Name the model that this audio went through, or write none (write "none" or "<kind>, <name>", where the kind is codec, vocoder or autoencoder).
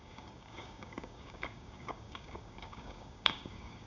codec, DAC